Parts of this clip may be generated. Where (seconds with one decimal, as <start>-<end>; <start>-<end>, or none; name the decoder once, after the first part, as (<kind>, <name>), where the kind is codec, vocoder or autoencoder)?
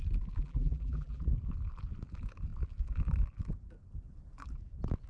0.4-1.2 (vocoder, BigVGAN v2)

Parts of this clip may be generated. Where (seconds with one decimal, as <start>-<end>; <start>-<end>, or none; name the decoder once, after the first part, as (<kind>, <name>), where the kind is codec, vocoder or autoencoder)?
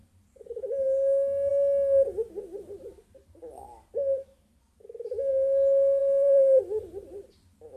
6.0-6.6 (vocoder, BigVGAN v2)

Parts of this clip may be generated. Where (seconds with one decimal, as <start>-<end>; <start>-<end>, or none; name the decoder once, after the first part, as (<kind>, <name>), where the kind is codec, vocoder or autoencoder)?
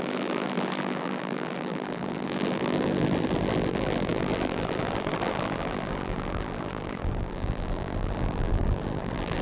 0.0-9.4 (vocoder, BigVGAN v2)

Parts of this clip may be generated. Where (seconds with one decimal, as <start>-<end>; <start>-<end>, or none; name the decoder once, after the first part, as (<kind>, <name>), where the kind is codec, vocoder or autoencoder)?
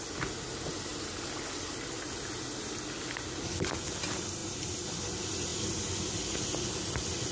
none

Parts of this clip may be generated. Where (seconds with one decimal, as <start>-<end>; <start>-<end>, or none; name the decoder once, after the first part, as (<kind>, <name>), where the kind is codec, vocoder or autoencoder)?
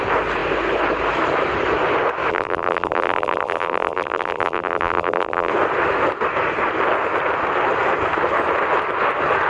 2.3-5.5 (vocoder, BigVGAN v2)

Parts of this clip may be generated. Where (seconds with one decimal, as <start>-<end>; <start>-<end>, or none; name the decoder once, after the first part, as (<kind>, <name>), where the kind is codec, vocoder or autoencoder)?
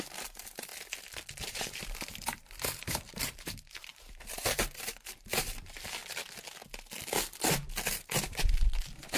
0.0-0.7 (vocoder, BigVGAN v2); 1.5-6.0; 7.9-9.2